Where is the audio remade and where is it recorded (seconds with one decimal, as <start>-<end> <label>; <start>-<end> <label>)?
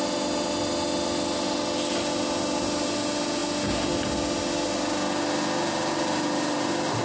0.0-7.0 recorded